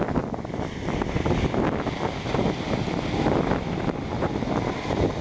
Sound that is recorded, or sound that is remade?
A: recorded